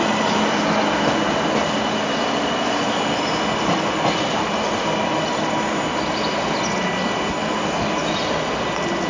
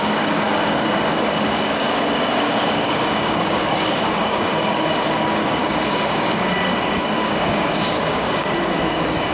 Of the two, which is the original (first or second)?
first